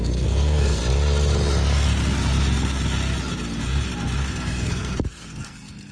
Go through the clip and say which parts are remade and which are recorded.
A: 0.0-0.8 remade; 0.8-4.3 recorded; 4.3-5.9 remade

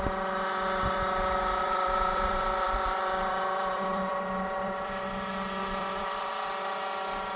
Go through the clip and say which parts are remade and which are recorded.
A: 0.0-1.6 recorded; 1.6-5.3 remade; 5.3-5.8 recorded; 5.8-6.3 remade; 6.3-7.4 recorded

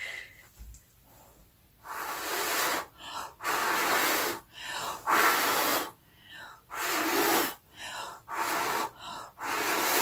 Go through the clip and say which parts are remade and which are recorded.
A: 0.0-10.0 recorded

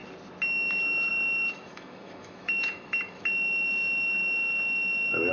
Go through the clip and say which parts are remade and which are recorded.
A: 0.0-1.1 recorded; 1.1-5.3 remade

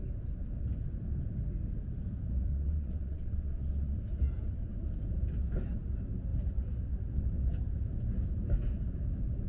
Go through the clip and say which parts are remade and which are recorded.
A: 0.0-2.5 recorded; 2.5-4.0 remade; 4.0-9.5 recorded